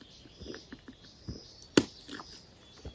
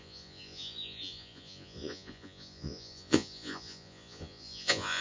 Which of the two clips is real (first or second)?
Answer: first